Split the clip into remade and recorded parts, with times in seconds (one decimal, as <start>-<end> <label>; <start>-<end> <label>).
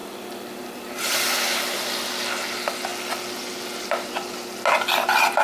0.0-5.4 recorded